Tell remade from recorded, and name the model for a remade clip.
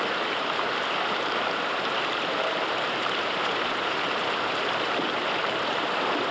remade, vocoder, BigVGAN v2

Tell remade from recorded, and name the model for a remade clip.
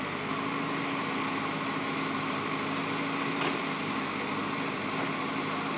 recorded